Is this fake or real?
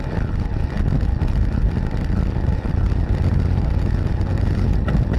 real